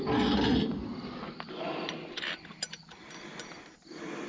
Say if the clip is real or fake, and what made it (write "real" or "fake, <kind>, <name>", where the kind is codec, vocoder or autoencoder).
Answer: real